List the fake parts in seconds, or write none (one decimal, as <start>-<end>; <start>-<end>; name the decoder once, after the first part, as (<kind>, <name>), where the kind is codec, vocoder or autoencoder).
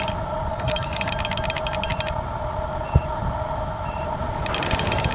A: 0.5-1.1 (codec, DAC)